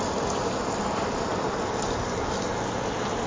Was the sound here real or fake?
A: fake